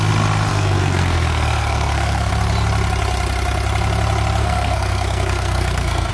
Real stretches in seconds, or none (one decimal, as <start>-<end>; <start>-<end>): 0.0-0.5; 2.3-4.4